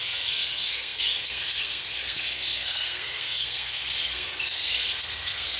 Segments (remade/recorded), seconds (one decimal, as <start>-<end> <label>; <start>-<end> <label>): 0.0-5.6 remade